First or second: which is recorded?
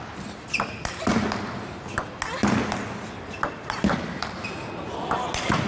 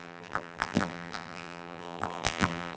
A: first